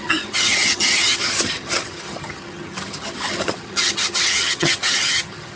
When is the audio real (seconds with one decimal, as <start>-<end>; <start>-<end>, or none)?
none